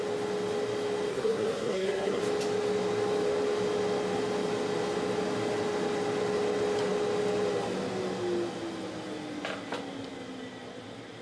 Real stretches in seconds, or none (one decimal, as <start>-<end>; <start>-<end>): 0.0-1.1; 2.2-11.2

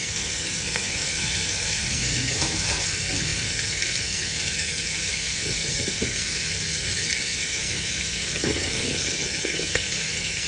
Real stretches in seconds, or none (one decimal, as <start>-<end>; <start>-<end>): none

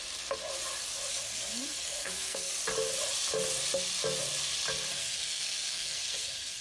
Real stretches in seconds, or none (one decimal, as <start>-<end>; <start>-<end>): 0.0-1.1; 2.5-4.9

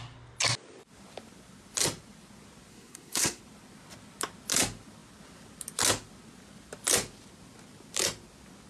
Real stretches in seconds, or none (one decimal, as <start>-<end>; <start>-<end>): 0.0-2.7; 3.4-8.7

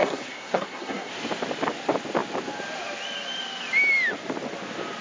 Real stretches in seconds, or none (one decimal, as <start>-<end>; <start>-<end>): 1.1-5.0

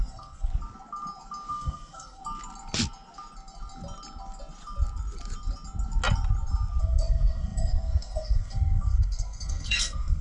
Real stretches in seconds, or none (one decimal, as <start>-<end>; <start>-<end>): 0.5-1.5; 2.2-6.8

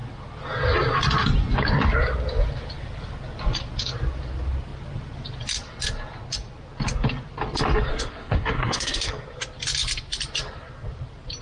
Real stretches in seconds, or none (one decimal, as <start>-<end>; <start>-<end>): 0.0-7.9; 9.1-11.4

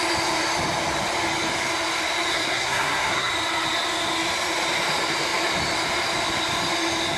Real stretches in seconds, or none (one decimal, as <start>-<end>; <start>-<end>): 0.0-2.3; 3.3-7.2